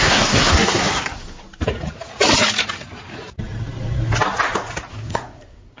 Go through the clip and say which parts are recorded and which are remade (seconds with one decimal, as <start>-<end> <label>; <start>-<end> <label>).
0.0-1.4 remade; 1.4-4.9 recorded; 4.9-5.8 remade